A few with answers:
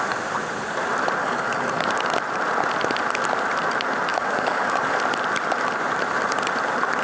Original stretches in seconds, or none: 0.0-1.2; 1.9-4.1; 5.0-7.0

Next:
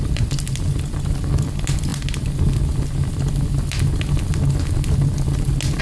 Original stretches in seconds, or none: 0.0-5.8